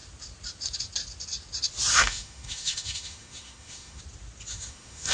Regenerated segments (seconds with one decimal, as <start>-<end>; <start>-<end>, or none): 1.9-4.0; 4.5-5.1